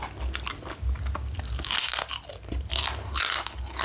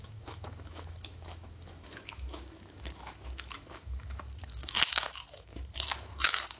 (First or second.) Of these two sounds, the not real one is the second